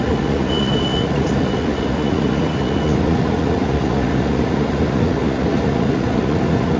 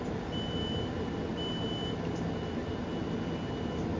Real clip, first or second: second